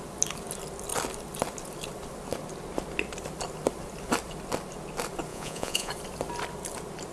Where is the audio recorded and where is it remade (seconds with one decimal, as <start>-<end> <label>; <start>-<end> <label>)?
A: 0.0-5.3 recorded; 5.3-5.9 remade; 5.9-7.1 recorded